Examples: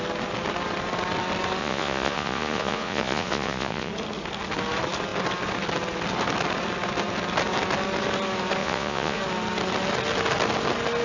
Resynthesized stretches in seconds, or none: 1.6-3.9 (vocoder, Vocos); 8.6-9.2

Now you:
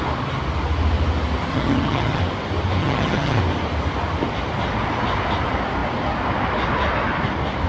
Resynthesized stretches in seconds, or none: 1.5-2.2 (vocoder, HiFi-GAN); 2.8-3.4

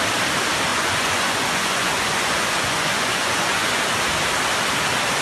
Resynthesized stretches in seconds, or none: 0.7-3.8 (vocoder, Vocos)